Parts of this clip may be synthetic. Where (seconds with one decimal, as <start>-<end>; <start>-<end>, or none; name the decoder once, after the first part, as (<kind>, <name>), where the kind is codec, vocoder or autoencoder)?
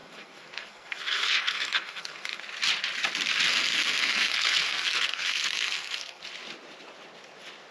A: 0.0-2.4 (codec, SNAC); 3.5-6.2